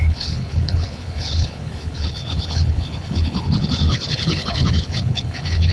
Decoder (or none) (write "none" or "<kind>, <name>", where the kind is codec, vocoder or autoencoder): codec, HILCodec